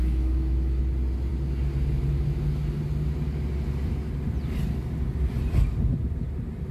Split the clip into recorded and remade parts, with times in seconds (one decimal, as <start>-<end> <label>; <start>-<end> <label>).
0.0-0.8 remade; 0.8-6.7 recorded